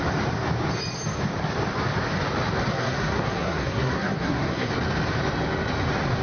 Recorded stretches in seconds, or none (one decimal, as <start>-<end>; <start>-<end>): 0.0-2.7; 4.7-6.2